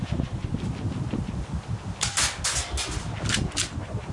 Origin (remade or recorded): recorded